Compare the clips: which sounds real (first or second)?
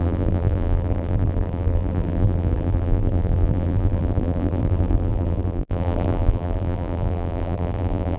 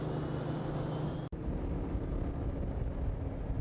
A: second